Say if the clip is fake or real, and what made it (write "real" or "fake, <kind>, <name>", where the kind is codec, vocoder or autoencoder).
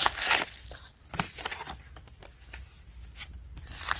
real